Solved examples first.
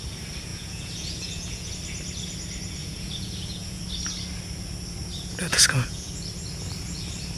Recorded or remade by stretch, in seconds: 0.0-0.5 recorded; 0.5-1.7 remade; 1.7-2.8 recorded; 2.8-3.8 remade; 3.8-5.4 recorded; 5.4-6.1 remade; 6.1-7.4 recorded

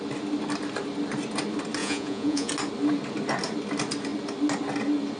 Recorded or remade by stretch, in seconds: 0.0-1.8 recorded; 1.8-2.5 remade; 2.5-5.2 recorded

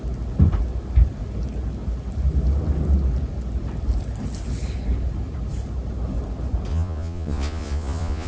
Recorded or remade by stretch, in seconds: 0.0-6.7 recorded; 6.7-8.3 remade

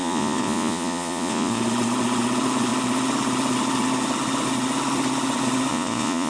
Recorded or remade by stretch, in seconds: 0.0-1.6 remade; 1.6-5.7 recorded; 5.7-6.3 remade

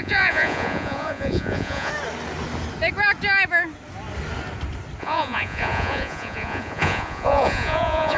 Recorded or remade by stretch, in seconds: 0.0-1.9 remade; 1.9-5.0 recorded; 5.0-8.2 remade

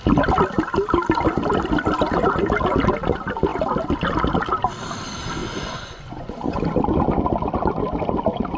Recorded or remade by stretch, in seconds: 0.0-5.4 recorded; 5.4-6.6 remade; 6.6-8.6 recorded

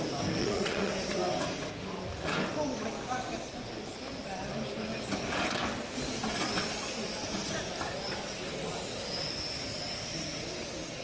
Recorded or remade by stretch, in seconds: 0.0-0.4 recorded; 0.4-0.9 remade; 0.9-11.0 recorded

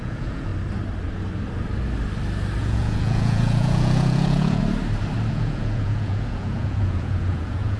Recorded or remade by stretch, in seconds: 0.0-0.5 remade; 0.5-2.6 recorded; 2.6-4.6 remade; 4.6-5.3 recorded; 5.3-7.8 remade